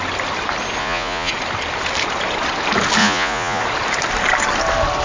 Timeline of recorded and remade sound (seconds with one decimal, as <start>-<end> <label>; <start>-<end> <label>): 0.0-0.8 recorded; 0.8-1.3 remade; 1.3-3.0 recorded; 3.0-3.6 remade; 3.6-5.0 recorded